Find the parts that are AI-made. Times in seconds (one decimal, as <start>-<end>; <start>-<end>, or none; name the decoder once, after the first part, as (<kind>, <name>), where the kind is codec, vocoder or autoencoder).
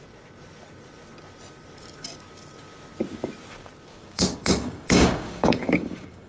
3.9-6.3 (codec, DAC)